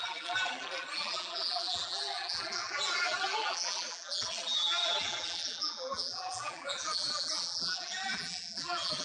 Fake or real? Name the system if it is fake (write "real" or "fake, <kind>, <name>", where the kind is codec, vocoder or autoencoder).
fake, vocoder, BigVGAN v2